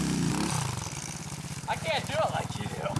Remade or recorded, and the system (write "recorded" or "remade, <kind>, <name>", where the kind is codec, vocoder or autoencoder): remade, vocoder, BigVGAN v2